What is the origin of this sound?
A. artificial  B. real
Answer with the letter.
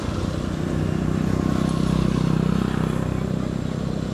B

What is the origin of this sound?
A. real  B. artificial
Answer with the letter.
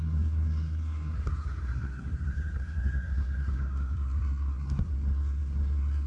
B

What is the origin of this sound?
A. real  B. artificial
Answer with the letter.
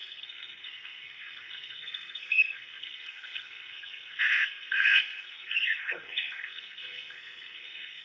B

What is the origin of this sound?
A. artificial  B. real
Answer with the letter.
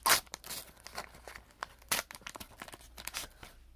B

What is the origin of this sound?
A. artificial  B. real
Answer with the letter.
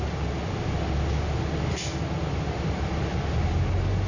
B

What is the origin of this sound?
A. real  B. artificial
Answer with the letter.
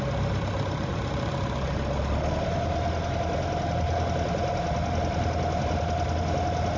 A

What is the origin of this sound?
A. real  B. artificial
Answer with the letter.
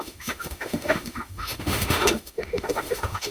B